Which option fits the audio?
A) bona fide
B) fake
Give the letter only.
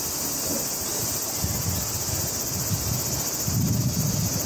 A